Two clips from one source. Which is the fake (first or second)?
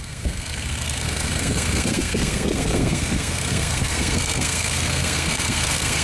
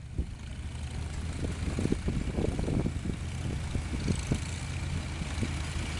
first